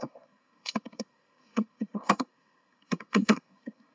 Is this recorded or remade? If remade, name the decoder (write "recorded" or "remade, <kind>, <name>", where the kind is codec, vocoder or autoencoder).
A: remade, codec, SNAC